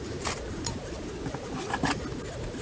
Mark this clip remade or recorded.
recorded